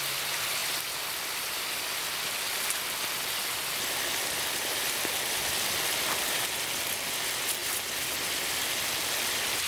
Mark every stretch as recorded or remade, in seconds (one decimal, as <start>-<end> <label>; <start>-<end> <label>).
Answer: 0.0-9.7 recorded